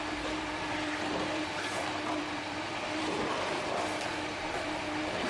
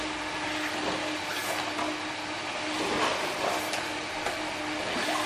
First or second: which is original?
second